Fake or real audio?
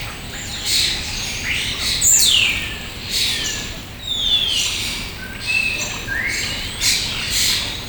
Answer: real